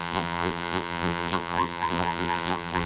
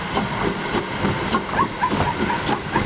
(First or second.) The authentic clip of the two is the second